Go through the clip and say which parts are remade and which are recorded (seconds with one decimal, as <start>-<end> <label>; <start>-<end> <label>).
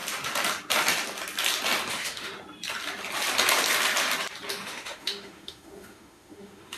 0.0-1.9 recorded; 1.9-2.3 remade; 2.3-4.5 recorded; 4.5-6.8 remade